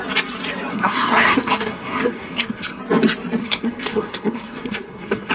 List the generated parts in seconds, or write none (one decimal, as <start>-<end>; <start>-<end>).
0.7-2.8; 3.4-5.3